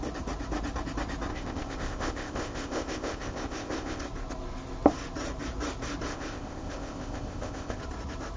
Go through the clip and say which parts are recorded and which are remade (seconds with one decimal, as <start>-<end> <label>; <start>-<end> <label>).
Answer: 0.0-1.3 recorded; 1.3-4.0 remade; 4.0-6.1 recorded; 6.1-7.8 remade; 7.8-8.4 recorded